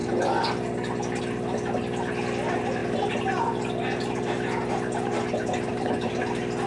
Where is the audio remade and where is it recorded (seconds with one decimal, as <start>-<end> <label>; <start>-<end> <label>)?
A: 0.0-6.7 recorded